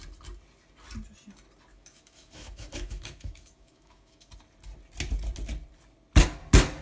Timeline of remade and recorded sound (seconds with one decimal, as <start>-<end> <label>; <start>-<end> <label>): 0.0-1.7 recorded; 1.7-4.3 remade; 4.3-6.8 recorded